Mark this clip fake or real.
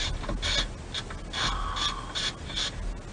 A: real